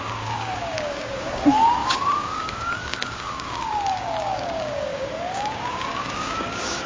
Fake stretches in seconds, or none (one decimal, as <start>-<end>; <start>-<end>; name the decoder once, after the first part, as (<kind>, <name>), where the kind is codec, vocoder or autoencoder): 0.0-6.9 (codec, DAC)